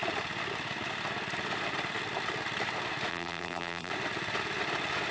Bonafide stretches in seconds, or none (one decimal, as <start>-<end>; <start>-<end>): 0.0-3.1; 3.9-5.1